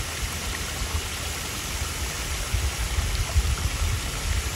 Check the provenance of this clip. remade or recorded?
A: recorded